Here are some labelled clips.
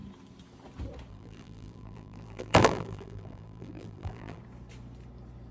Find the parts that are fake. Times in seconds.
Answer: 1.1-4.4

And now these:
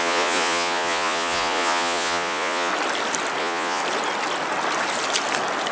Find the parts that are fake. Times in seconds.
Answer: 0.0-2.7; 3.4-3.8

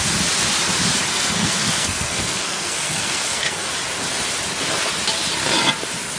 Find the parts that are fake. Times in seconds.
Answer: 1.1-3.7

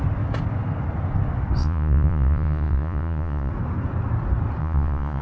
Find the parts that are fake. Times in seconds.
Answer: 1.6-3.5; 4.6-5.2

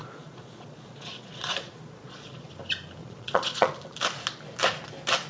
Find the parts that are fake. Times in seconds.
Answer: 0.0-2.5; 3.0-3.7

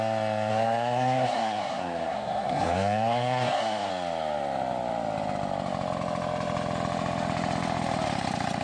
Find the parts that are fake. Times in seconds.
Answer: 0.5-3.9

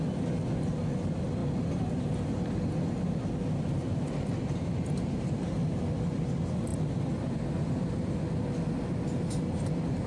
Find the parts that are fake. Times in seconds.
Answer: none